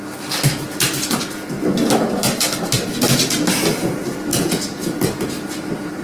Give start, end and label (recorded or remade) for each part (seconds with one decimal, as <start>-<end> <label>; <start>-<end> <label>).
0.0-4.3 recorded; 4.3-5.0 remade; 5.0-6.0 recorded